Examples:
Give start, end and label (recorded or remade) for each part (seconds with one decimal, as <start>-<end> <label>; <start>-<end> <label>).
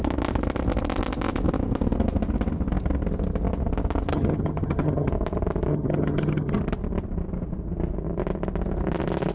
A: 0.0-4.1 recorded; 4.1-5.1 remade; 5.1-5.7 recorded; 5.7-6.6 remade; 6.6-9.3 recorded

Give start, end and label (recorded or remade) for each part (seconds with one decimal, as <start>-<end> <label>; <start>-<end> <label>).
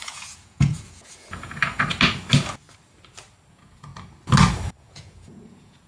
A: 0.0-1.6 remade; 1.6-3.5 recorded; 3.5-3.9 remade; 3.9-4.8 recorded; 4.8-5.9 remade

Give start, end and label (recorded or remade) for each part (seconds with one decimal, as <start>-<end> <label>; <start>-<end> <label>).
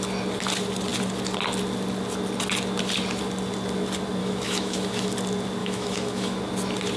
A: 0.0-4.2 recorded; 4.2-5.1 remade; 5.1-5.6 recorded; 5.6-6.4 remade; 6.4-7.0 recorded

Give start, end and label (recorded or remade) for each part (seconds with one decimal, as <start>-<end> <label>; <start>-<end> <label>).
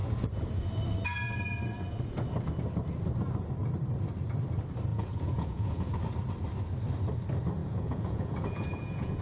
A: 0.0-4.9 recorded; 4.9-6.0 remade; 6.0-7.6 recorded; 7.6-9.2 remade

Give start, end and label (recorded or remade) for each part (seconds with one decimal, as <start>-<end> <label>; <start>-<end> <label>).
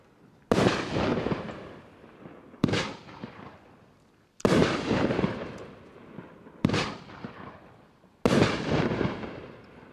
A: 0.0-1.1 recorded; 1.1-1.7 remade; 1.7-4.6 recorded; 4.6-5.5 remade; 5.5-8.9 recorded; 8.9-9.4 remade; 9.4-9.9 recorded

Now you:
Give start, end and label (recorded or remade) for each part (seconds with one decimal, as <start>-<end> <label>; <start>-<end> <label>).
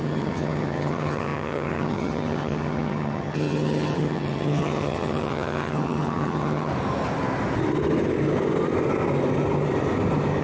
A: 0.0-6.7 remade; 6.7-10.4 recorded